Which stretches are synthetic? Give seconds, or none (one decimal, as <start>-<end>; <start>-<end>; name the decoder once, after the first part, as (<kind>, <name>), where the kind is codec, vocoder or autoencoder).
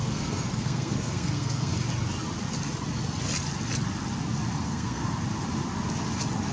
0.0-1.7 (codec, SNAC); 4.6-5.0